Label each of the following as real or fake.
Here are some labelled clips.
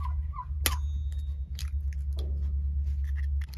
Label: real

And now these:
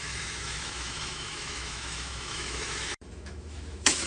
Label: fake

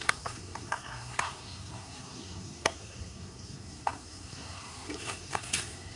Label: fake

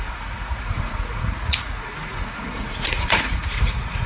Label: fake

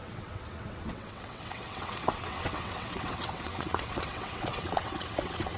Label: fake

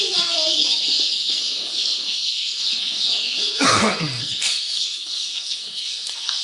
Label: fake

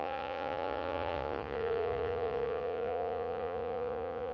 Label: fake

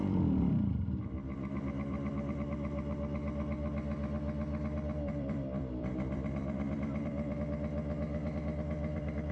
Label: fake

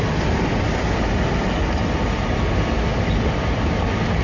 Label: real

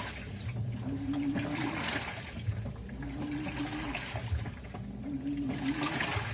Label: real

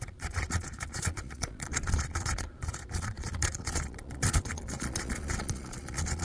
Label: fake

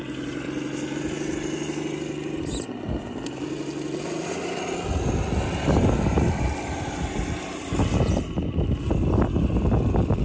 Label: real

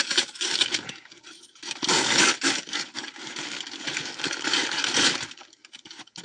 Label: fake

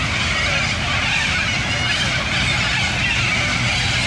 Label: real